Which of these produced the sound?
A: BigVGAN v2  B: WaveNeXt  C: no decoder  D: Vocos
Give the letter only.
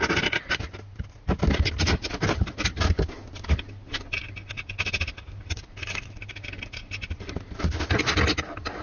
C